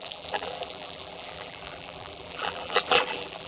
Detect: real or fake fake